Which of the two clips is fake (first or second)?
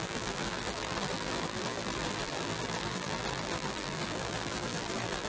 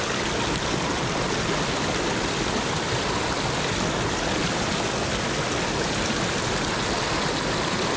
first